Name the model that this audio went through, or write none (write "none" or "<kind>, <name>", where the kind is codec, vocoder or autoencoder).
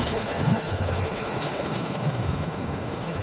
autoencoder, DAC-VAE